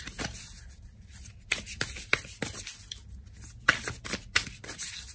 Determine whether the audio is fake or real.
real